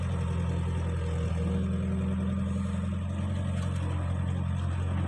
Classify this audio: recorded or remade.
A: recorded